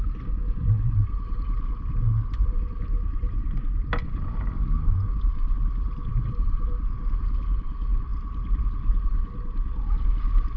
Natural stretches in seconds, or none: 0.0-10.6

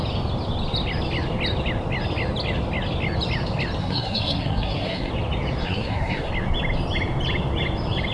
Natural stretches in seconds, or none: 0.0-3.8; 5.1-5.6; 6.3-8.1

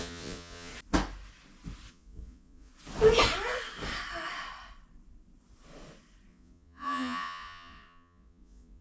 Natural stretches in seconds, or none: 0.7-1.9; 2.7-6.3

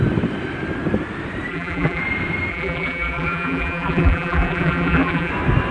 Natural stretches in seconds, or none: 0.0-1.5; 2.0-2.5; 5.3-5.7

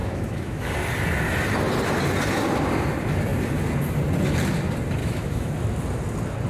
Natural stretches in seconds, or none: 0.7-5.0; 5.5-6.5

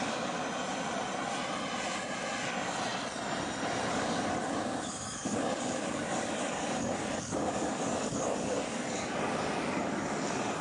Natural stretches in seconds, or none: 0.4-3.9

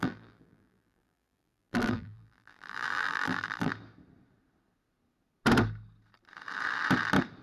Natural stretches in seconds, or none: 3.7-7.4